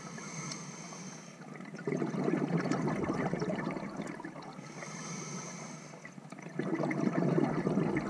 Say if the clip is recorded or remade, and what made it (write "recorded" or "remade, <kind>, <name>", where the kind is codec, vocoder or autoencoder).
recorded